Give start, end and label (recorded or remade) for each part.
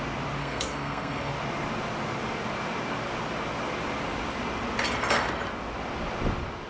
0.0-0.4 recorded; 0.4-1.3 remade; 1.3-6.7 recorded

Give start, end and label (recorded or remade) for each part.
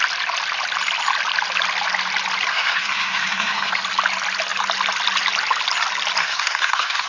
0.0-2.5 recorded; 2.5-3.7 remade; 3.7-6.2 recorded; 6.2-7.1 remade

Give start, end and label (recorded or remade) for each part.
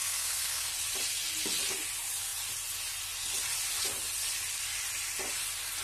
0.0-0.7 remade; 0.7-5.8 recorded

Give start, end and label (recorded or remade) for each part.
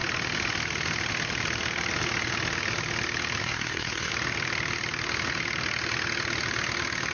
0.0-3.4 recorded; 3.4-4.1 remade; 4.1-7.1 recorded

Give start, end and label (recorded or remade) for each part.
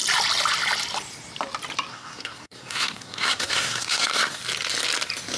0.0-1.9 recorded; 1.9-4.4 remade; 4.4-5.4 recorded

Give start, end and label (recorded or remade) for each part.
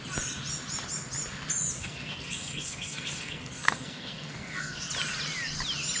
0.0-1.8 recorded; 1.8-4.9 remade; 4.9-6.0 recorded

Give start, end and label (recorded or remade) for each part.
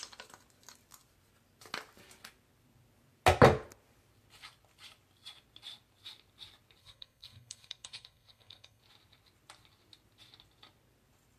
0.0-6.8 recorded; 6.8-8.8 remade; 8.8-11.4 recorded